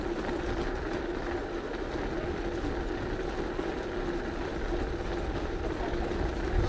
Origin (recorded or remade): recorded